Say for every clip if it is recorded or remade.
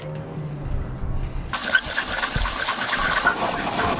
recorded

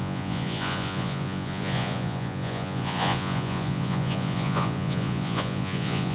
remade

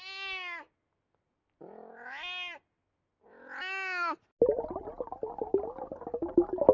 recorded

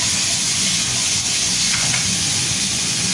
remade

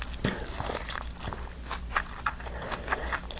recorded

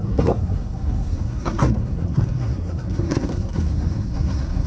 remade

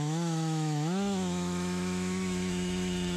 remade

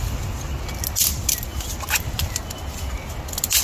recorded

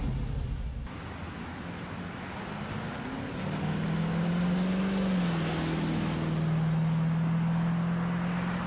recorded